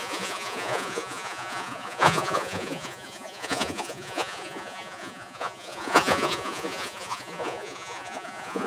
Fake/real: fake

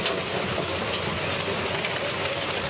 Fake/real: real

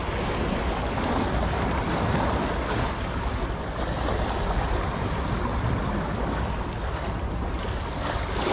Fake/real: real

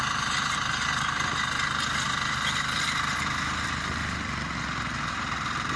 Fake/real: real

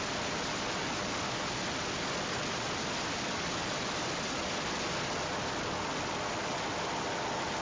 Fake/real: real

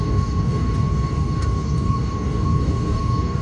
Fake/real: fake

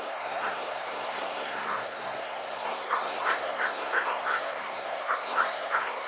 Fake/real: fake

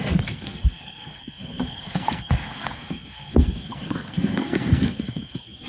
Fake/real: fake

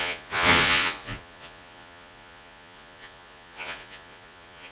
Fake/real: fake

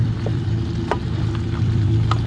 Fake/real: fake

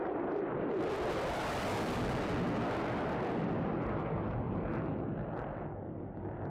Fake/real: real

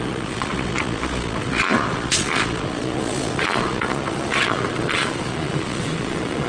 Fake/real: fake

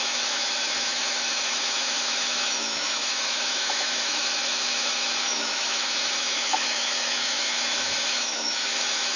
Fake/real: fake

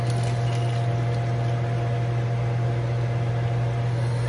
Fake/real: real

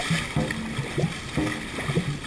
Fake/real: real